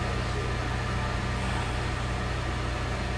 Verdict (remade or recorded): recorded